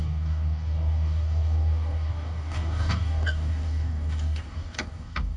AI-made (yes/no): yes